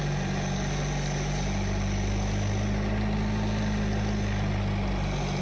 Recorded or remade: recorded